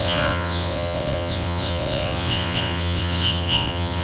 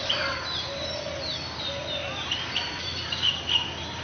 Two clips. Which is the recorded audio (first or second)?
second